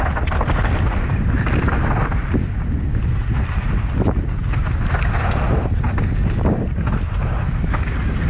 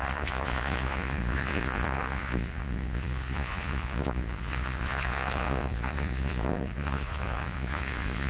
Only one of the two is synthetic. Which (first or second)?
second